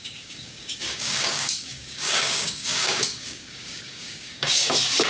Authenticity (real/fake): fake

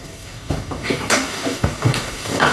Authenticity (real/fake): fake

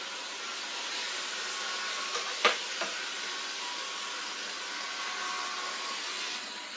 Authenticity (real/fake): real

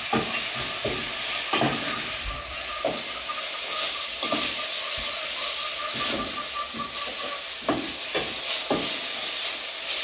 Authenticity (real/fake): real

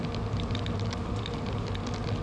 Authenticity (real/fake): real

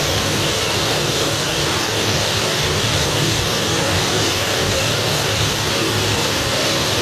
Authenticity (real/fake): fake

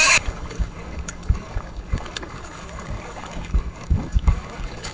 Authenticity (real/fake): fake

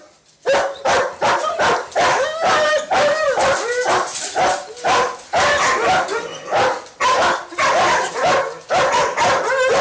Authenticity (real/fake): real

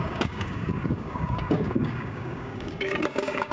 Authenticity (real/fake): fake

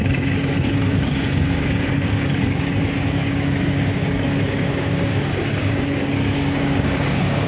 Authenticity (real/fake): fake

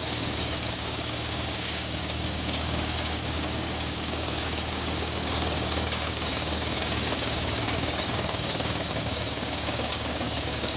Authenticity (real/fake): fake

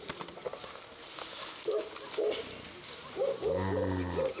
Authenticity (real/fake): real